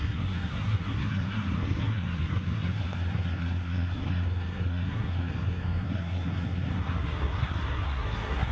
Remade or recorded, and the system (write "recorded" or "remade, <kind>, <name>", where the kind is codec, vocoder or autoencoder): remade, codec, SNAC